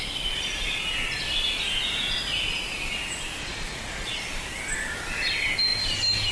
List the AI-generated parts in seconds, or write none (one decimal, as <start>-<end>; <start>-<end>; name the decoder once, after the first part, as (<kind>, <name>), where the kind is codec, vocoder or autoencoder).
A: 3.4-4.2 (vocoder, Vocos)